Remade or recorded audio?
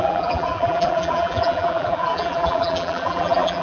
remade